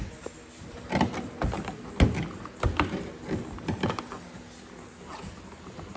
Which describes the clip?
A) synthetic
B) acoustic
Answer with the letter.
B